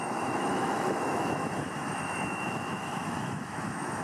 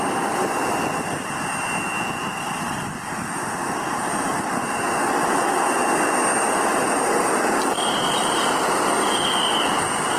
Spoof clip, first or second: first